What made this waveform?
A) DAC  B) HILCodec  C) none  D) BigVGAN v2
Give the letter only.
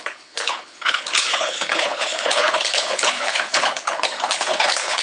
B